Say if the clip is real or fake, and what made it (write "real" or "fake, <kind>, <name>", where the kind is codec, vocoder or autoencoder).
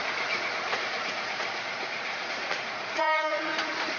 fake, vocoder, Vocos